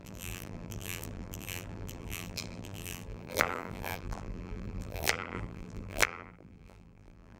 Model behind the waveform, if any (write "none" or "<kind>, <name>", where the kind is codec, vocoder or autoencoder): vocoder, BigVGAN v2